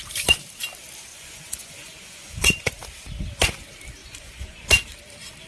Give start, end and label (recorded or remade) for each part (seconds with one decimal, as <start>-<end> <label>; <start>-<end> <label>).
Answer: 0.0-1.1 recorded; 1.1-2.7 remade; 2.7-4.0 recorded; 4.0-4.6 remade; 4.6-5.5 recorded